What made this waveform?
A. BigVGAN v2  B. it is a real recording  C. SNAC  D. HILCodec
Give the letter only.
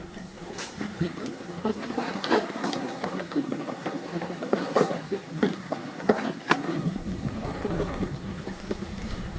C